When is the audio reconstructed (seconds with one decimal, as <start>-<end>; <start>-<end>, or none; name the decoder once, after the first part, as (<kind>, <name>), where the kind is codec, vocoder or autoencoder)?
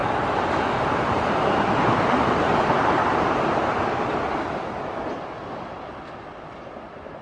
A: none